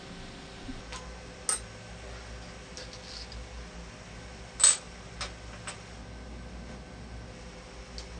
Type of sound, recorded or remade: recorded